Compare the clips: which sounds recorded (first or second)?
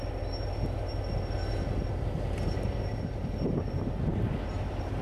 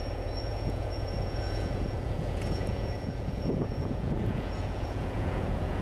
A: first